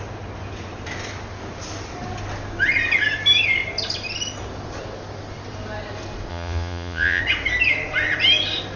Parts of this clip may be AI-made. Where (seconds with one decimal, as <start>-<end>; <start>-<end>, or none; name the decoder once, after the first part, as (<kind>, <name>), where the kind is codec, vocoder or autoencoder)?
6.3-7.2 (vocoder, Vocos)